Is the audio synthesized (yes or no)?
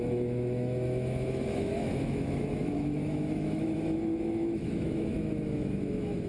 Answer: yes